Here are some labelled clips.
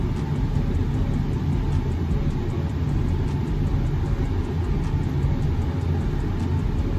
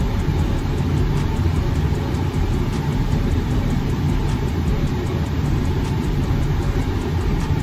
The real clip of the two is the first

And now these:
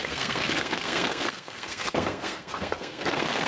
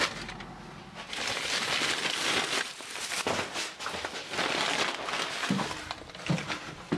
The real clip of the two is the second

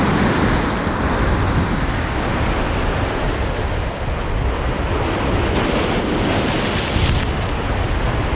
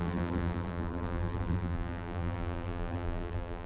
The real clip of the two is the first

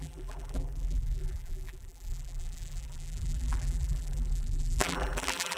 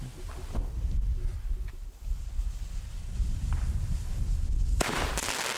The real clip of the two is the second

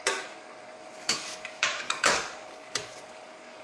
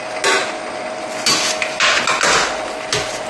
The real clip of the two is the second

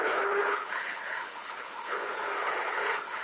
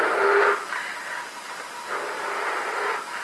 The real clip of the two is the second